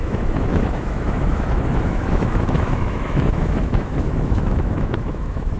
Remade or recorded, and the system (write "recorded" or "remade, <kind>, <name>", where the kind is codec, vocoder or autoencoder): remade, autoencoder, DAC-VAE